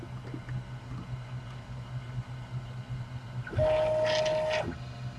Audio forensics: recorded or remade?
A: recorded